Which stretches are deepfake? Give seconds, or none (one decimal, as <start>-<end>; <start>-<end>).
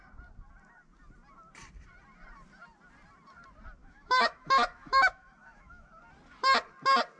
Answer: 3.8-5.9